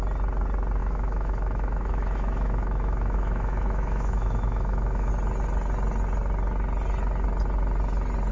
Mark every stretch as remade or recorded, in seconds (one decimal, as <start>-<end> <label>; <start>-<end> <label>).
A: 0.0-0.8 recorded; 0.8-5.1 remade; 5.1-8.3 recorded